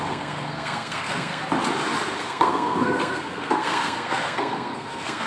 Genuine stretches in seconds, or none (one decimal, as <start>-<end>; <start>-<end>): 1.4-2.2